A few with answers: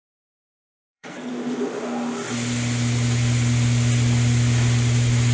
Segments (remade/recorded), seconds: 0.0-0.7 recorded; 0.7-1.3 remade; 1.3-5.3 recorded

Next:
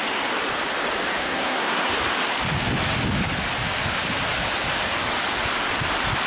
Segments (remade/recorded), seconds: 0.0-1.2 recorded; 1.2-1.9 remade; 1.9-6.3 recorded

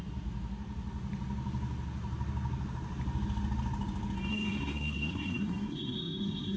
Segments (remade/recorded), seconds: 0.0-4.3 recorded; 4.3-6.6 remade

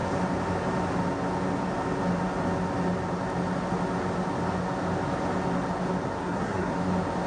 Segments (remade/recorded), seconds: 0.0-6.2 recorded; 6.2-6.7 remade; 6.7-7.3 recorded

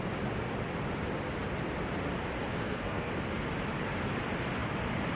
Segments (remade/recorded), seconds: 0.0-2.5 recorded; 2.5-3.1 remade; 3.1-5.2 recorded

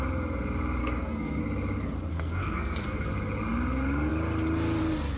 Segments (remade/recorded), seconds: 0.0-0.8 recorded; 0.8-1.4 remade; 1.4-2.1 recorded; 2.1-3.1 remade; 3.1-5.2 recorded